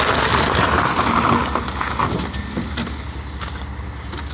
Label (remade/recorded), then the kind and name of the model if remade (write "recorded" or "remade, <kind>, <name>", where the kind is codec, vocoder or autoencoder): recorded